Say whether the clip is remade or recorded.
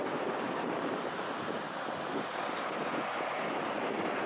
recorded